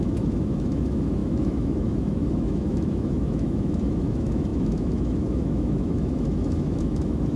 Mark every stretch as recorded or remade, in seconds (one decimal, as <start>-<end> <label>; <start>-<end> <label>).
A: 0.0-7.4 remade